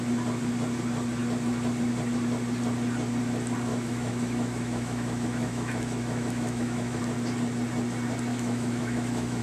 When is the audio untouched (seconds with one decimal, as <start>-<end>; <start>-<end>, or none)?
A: 0.0-3.7; 7.0-8.3